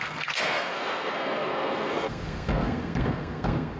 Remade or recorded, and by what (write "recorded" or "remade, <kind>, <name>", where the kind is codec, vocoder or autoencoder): remade, codec, SNAC